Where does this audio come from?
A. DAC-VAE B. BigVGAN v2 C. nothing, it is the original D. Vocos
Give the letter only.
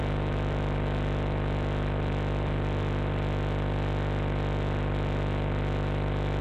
C